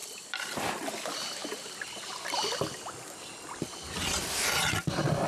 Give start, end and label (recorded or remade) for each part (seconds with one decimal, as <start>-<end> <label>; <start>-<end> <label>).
0.0-0.7 remade; 0.7-1.4 recorded; 1.4-3.9 remade; 3.9-5.3 recorded

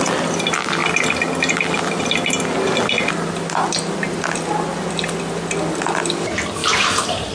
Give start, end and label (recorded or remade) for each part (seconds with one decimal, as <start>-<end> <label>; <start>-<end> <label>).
0.0-6.6 recorded; 6.6-7.3 remade

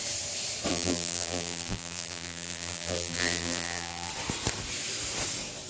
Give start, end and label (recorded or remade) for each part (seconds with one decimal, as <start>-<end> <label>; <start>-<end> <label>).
0.0-0.7 recorded; 0.7-4.1 remade; 4.1-5.7 recorded

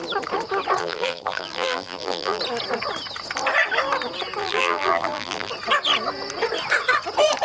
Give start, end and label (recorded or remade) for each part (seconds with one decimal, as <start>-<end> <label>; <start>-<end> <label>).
0.0-0.8 recorded; 0.8-2.4 remade; 2.4-4.4 recorded; 4.4-5.5 remade; 5.5-7.4 recorded

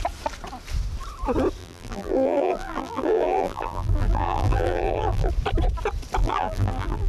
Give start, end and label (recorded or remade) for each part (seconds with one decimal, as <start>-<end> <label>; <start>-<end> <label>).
0.0-1.6 recorded; 1.6-5.3 remade; 5.3-6.2 recorded; 6.2-7.1 remade